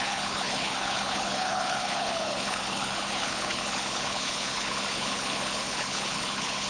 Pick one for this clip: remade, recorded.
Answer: remade